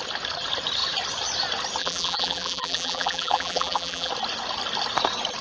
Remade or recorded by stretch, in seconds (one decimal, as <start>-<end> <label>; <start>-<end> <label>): 0.0-1.8 recorded; 1.8-4.1 remade; 4.1-5.4 recorded